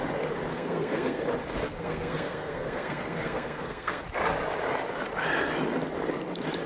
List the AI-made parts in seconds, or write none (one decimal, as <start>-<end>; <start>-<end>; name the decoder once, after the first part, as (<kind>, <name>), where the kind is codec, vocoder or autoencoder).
0.5-1.2 (codec, SNAC); 1.6-4.0